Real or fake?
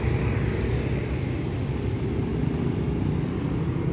real